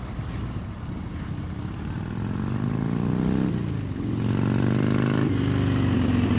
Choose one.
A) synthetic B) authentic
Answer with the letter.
B